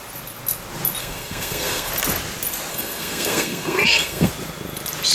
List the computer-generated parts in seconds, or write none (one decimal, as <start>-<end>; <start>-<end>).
1.0-1.9; 2.7-4.3